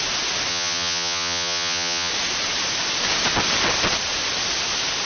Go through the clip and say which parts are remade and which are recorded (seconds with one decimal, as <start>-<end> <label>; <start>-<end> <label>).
0.0-0.5 recorded; 0.5-2.1 remade; 2.1-5.0 recorded